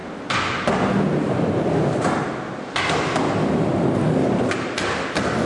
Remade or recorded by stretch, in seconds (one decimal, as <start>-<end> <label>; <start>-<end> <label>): 0.0-5.5 recorded